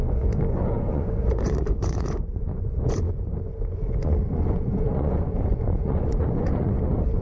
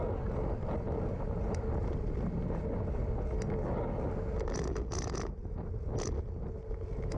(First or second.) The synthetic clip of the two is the first